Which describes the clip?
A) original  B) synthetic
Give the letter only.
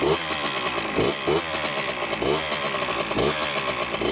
A